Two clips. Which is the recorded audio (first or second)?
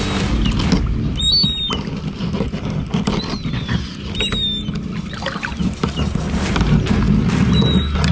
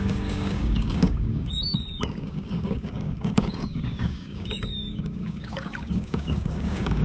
first